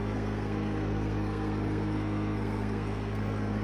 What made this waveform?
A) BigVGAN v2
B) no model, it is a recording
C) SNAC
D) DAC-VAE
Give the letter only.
C